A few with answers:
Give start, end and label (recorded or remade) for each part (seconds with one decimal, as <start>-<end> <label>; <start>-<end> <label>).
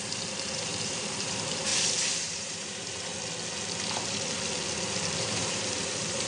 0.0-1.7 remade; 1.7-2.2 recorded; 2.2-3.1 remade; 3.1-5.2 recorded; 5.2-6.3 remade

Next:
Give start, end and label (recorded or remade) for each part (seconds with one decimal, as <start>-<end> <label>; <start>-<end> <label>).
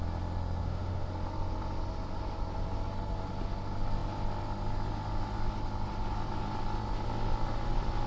0.0-0.6 recorded; 0.6-1.1 remade; 1.1-8.1 recorded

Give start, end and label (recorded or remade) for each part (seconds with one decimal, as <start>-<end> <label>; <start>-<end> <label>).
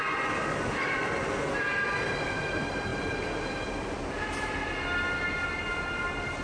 0.0-6.4 recorded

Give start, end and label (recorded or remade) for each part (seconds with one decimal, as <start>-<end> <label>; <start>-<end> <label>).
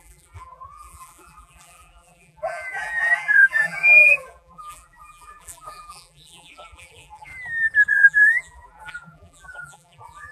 0.0-7.3 remade; 7.3-7.9 recorded; 7.9-10.3 remade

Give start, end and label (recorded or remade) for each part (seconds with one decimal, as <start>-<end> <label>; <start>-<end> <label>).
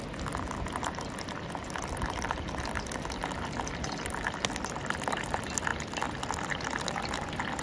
0.0-7.6 recorded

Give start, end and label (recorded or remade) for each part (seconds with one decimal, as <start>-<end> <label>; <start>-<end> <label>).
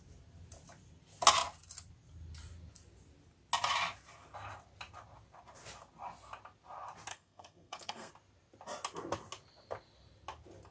0.0-7.1 recorded; 7.1-8.1 remade; 8.1-10.7 recorded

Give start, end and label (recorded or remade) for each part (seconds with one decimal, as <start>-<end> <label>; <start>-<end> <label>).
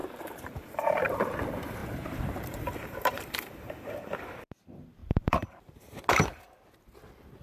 0.0-1.4 remade; 1.4-1.8 recorded; 1.8-4.3 remade; 4.3-5.0 recorded; 5.0-5.8 remade; 5.8-7.4 recorded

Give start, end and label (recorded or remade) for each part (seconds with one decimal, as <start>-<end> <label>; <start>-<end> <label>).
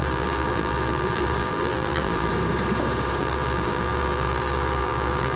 0.0-2.3 remade; 2.3-3.2 recorded; 3.2-5.4 remade